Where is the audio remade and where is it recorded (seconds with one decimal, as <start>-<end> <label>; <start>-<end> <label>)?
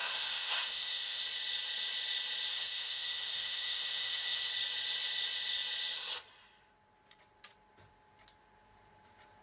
0.0-1.2 remade; 1.2-2.5 recorded; 2.5-4.5 remade; 4.5-9.4 recorded